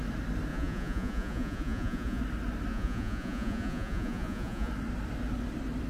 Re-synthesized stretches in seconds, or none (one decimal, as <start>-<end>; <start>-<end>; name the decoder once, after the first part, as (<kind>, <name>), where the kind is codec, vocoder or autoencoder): 0.5-2.2 (vocoder, Vocos); 2.7-4.7